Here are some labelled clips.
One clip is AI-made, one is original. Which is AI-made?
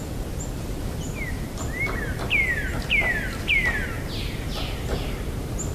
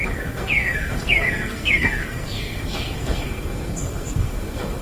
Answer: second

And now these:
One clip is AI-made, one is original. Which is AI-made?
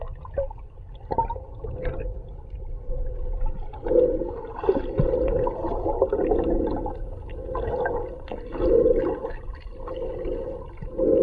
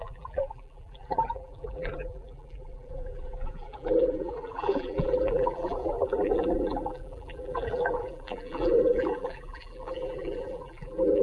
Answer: second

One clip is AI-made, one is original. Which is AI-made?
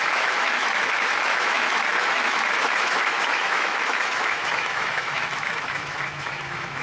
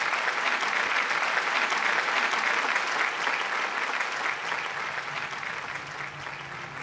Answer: first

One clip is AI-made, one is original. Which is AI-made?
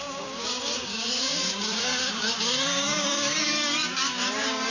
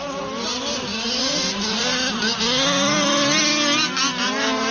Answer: first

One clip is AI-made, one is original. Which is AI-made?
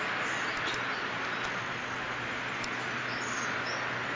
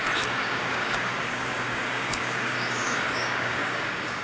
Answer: second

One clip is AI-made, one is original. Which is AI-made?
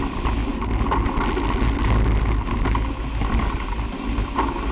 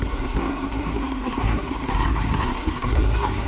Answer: second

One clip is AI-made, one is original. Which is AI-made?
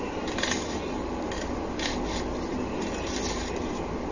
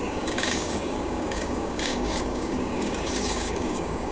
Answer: second